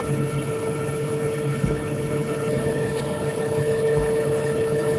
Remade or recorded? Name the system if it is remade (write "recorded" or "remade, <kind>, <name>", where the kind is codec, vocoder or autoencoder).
remade, codec, HILCodec